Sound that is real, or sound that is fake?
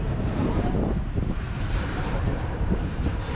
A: fake